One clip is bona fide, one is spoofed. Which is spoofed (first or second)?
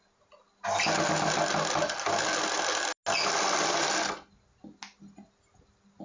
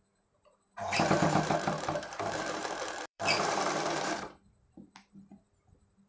second